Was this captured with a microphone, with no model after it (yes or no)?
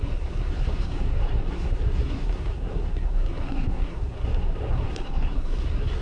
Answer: no